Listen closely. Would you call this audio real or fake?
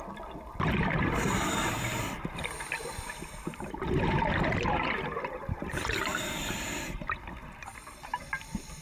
fake